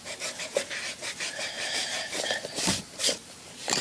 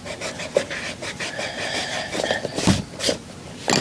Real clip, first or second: second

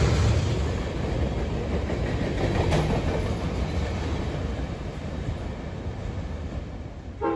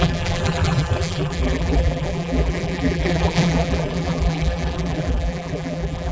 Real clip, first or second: first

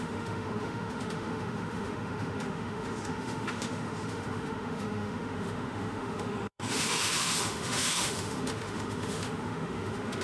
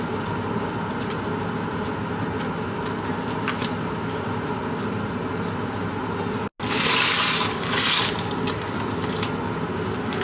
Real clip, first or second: second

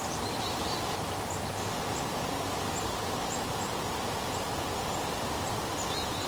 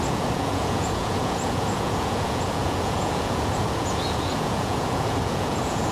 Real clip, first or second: first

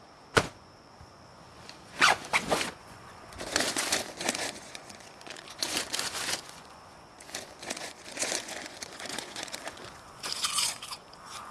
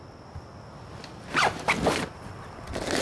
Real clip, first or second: second